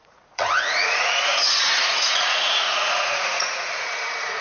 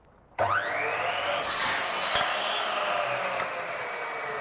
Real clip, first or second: second